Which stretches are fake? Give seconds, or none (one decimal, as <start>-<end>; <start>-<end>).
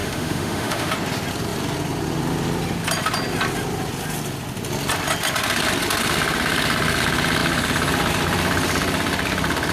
0.0-0.9